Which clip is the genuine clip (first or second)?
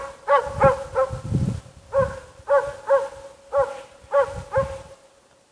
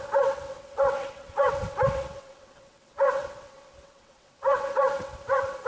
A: first